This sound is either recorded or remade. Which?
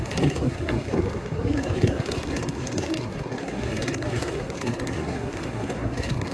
remade